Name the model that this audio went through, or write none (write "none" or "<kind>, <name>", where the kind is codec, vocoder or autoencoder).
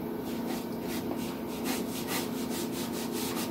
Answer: none